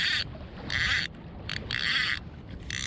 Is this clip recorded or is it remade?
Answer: recorded